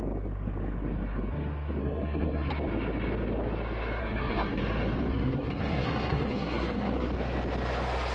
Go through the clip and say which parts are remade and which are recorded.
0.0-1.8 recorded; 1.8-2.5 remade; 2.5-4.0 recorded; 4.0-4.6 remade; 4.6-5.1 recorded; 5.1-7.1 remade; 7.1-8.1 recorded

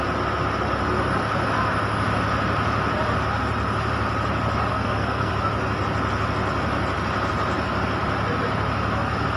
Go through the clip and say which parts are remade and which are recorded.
0.0-4.7 recorded; 4.7-5.3 remade; 5.3-9.4 recorded

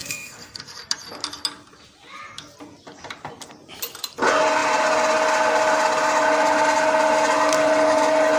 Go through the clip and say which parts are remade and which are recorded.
0.0-0.8 remade; 0.8-8.4 recorded

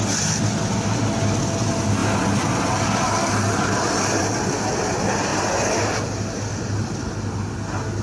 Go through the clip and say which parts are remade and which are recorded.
0.0-8.0 recorded

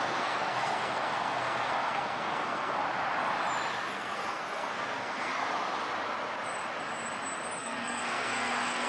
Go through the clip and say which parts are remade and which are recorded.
0.0-2.8 remade; 2.8-3.9 recorded; 3.9-5.3 remade; 5.3-7.6 recorded; 7.6-8.9 remade

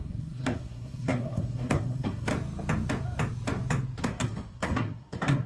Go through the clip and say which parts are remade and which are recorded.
0.0-2.3 remade; 2.3-4.0 recorded; 4.0-5.5 remade

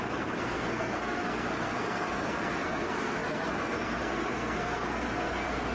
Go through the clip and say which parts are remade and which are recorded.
0.0-5.7 remade